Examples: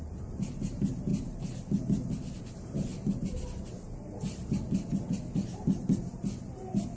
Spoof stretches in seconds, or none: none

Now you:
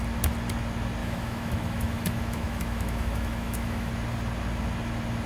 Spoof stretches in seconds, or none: 1.0-3.9 (autoencoder, DAC-VAE)